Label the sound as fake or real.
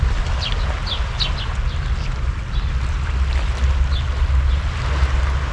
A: real